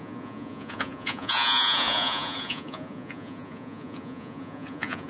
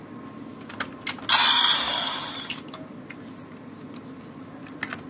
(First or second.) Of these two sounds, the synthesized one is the first